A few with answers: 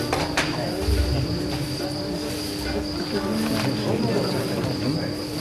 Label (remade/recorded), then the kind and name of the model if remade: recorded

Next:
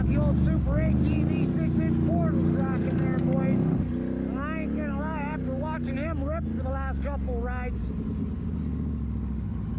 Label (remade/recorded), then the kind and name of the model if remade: recorded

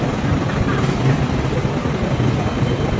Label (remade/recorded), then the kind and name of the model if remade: recorded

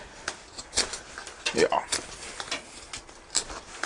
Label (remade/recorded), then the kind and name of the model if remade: recorded